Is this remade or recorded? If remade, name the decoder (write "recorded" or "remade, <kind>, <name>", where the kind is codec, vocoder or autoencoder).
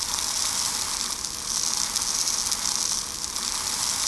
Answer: recorded